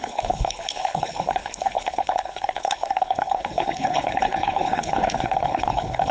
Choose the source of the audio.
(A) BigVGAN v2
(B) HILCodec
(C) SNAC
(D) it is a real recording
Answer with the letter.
B